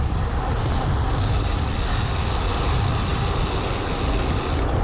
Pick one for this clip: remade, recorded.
recorded